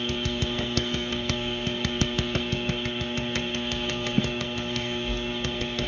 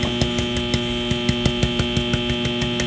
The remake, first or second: first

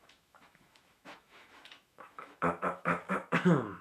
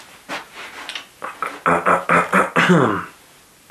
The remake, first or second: first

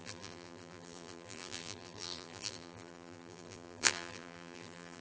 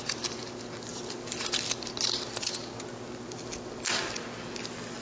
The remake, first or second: first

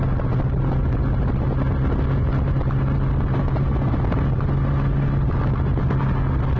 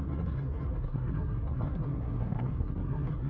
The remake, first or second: second